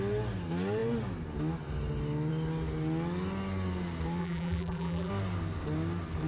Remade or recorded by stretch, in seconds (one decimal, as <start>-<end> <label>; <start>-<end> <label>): 0.0-4.2 recorded; 4.2-5.1 remade; 5.1-6.3 recorded